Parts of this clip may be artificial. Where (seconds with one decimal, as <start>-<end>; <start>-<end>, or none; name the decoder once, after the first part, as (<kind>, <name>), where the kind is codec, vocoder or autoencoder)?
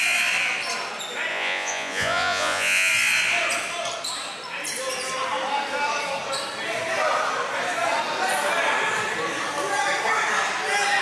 1.3-2.9 (vocoder, Vocos)